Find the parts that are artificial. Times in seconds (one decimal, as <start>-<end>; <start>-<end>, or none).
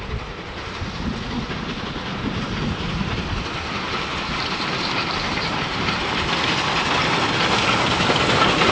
4.1-6.0